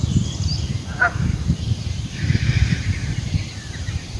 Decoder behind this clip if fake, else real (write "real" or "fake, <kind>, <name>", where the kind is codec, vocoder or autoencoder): fake, vocoder, BigVGAN v2